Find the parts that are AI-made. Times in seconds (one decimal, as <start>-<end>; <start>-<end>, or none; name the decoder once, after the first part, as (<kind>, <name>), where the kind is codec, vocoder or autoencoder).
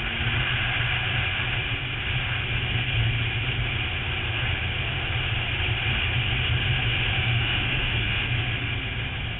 7.1-8.7 (autoencoder, DAC-VAE)